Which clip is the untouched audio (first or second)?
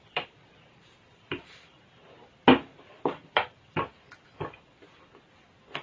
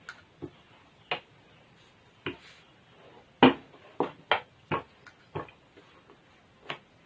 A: second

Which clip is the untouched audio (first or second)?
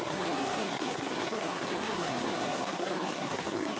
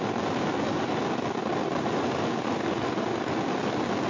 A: second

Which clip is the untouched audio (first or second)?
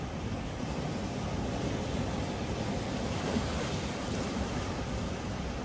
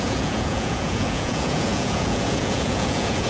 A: first